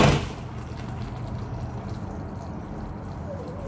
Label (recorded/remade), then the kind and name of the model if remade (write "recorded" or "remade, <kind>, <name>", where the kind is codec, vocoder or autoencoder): recorded